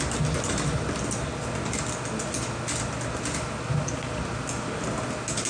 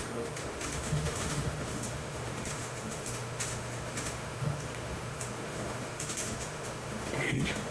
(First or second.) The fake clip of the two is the second